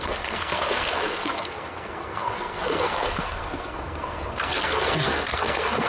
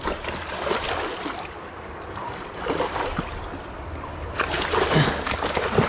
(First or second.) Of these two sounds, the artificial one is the first